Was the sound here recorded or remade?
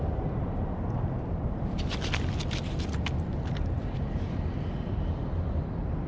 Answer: recorded